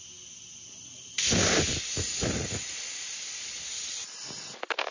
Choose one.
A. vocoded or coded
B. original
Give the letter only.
B